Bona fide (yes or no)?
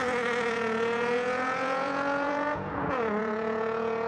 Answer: no